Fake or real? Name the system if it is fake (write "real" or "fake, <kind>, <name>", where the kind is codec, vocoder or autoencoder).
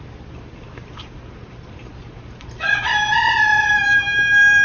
fake, vocoder, BigVGAN v2